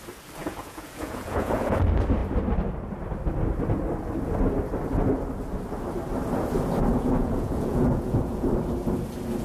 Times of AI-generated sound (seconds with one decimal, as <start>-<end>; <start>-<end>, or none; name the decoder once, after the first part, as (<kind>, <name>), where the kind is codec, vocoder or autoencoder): 0.4-1.8 (vocoder, Vocos); 6.9-8.5